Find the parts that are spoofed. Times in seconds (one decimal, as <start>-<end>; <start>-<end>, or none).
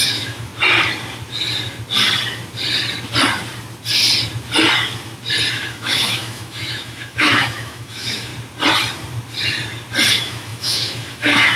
0.0-0.5; 5.5-8.3; 10.1-11.6